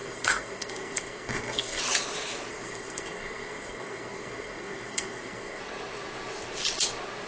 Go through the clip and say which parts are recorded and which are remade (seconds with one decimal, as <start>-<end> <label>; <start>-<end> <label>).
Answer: 0.0-1.8 remade; 1.8-2.5 recorded; 2.5-5.6 remade; 5.6-7.3 recorded